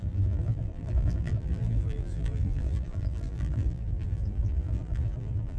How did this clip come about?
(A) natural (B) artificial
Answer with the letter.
B